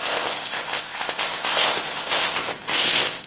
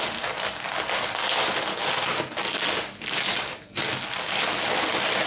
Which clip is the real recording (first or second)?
second